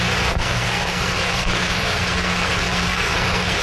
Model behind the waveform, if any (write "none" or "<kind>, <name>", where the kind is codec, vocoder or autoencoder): codec, SNAC